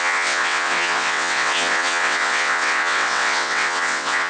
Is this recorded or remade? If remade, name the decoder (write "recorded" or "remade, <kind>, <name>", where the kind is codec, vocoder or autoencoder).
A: remade, vocoder, WaveNeXt